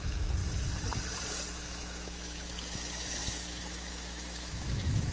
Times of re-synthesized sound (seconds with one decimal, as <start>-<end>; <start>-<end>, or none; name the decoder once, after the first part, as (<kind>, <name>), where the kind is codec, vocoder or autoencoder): 0.0-0.4 (autoencoder, DAC-VAE); 1.5-5.1